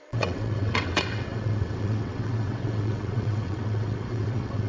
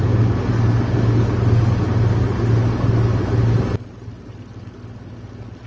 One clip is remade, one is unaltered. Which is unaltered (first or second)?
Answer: second